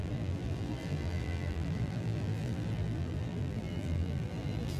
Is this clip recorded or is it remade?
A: remade